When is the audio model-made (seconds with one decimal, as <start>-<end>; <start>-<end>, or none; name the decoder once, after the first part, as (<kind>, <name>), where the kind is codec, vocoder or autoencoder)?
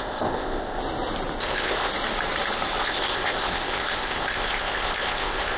0.0-0.8 (codec, ZipCodec); 1.4-1.9; 2.8-5.6